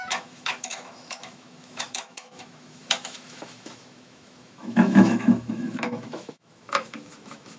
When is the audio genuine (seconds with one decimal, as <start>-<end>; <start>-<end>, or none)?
none